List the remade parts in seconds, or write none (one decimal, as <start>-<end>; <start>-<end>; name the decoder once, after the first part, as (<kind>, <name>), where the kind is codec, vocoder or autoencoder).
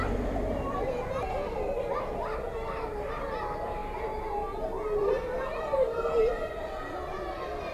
5.0-6.3 (vocoder, BigVGAN v2)